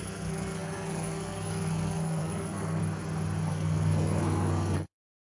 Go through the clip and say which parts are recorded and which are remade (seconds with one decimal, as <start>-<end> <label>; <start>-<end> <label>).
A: 0.0-2.8 remade; 2.8-3.5 recorded; 3.5-5.2 remade